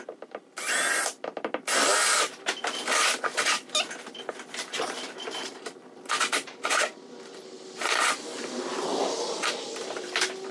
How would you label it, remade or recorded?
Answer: recorded